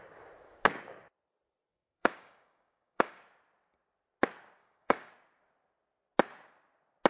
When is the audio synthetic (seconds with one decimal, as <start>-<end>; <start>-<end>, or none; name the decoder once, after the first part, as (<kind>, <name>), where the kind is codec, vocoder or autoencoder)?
1.7-3.2 (codec, DAC); 4.6-5.1